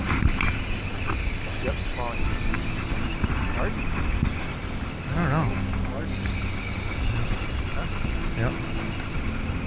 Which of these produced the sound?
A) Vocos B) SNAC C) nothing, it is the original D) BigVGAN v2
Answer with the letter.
C